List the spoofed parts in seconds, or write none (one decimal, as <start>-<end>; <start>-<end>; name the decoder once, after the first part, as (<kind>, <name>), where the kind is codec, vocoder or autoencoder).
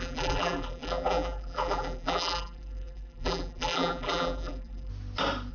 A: 0.0-4.9 (vocoder, BigVGAN v2)